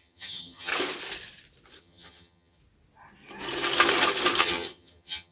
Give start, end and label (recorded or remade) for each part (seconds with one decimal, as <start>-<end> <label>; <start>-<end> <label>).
0.0-0.7 remade; 0.7-1.8 recorded; 1.8-2.6 remade; 2.6-4.4 recorded; 4.4-5.3 remade